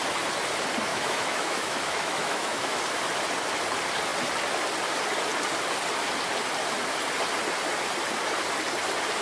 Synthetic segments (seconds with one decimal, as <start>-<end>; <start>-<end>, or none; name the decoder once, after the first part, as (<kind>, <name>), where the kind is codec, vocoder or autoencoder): 0.9-2.8 (autoencoder, DAC-VAE)